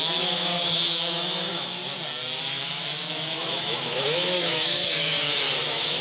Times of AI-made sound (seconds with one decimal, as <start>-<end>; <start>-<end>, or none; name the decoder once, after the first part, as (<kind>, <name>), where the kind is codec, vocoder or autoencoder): 0.0-1.8 (autoencoder, DAC-VAE); 2.4-6.0